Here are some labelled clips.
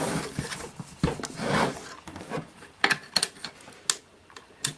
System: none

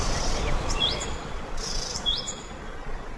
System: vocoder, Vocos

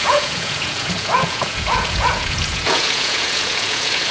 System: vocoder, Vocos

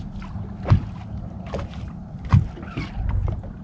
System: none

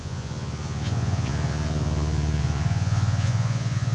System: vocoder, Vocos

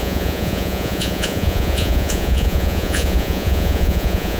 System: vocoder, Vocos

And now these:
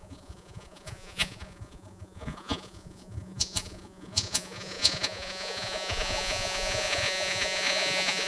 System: vocoder, Vocos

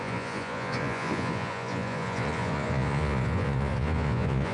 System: vocoder, Vocos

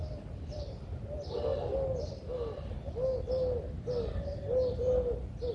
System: none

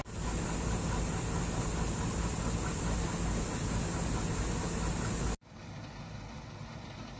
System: none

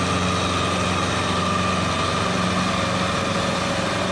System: none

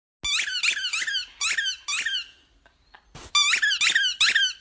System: none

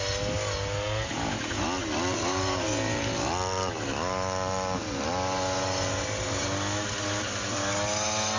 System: none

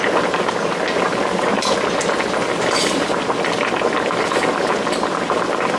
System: none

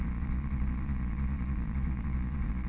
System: vocoder, Vocos